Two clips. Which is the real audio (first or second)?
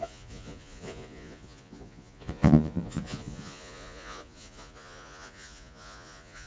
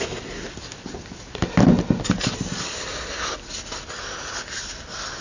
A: second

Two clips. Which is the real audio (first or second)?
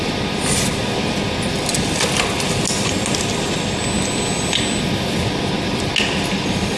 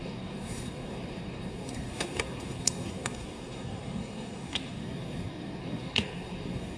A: first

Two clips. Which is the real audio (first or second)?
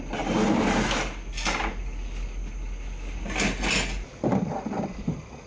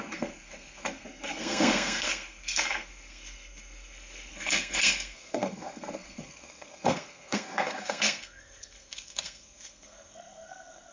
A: first